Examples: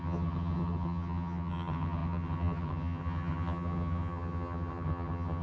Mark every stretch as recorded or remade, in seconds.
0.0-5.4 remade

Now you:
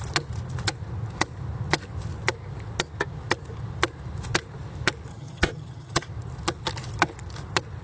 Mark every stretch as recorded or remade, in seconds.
0.0-5.1 recorded; 5.1-6.1 remade; 6.1-7.8 recorded